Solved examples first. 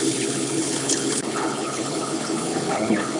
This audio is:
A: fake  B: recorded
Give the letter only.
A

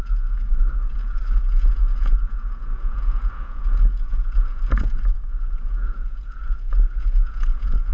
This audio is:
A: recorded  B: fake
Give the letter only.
B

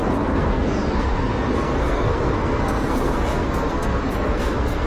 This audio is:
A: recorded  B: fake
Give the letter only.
B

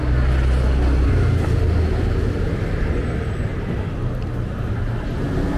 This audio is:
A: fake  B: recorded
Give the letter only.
B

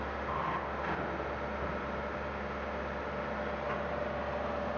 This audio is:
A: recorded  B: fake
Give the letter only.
A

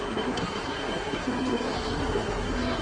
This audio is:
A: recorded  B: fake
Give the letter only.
B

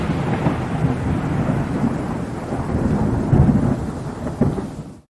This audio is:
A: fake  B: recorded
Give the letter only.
B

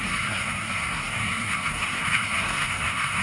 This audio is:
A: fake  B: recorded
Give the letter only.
A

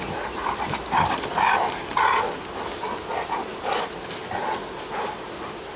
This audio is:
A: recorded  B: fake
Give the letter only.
A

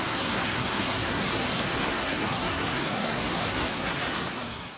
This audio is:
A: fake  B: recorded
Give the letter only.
A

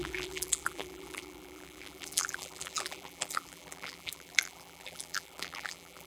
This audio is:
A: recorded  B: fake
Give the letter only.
B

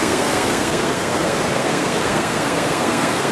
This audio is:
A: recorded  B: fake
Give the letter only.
B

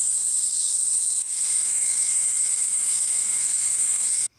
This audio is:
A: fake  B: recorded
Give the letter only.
A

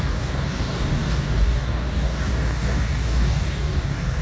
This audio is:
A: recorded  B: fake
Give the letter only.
B